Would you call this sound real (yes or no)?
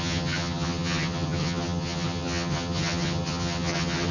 no